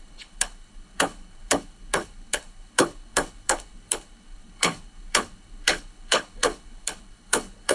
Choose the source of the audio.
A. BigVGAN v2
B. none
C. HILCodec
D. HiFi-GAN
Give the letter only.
C